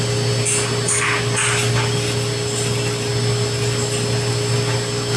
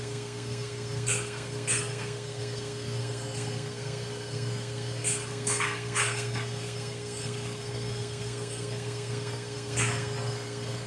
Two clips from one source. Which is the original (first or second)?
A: first